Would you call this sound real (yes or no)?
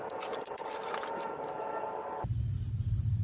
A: no